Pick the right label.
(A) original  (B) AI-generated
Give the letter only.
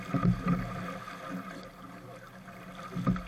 A